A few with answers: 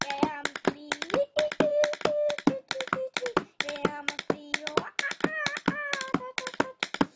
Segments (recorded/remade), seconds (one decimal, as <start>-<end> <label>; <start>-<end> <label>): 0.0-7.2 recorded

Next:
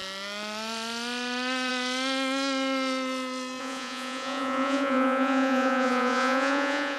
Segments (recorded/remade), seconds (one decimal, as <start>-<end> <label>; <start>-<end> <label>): 0.0-3.6 recorded; 3.6-7.0 remade

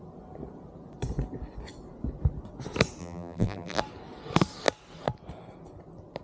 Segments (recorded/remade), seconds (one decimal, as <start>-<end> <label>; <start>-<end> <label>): 0.0-3.0 recorded; 3.0-3.8 remade; 3.8-6.2 recorded